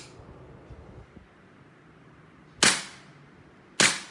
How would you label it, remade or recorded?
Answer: recorded